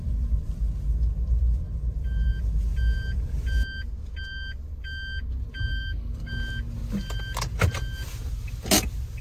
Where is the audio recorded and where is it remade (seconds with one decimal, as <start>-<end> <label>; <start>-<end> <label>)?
0.0-5.7 recorded; 5.7-6.3 remade; 6.3-9.2 recorded